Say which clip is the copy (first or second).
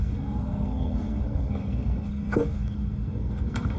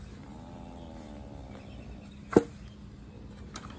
first